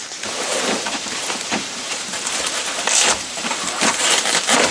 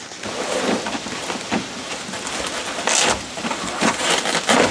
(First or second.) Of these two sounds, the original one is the second